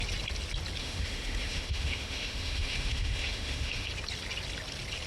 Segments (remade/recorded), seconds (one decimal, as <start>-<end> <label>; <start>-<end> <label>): 0.0-0.8 recorded; 0.8-3.9 remade; 3.9-5.1 recorded